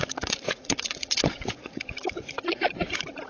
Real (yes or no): no